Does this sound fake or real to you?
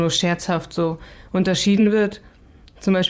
fake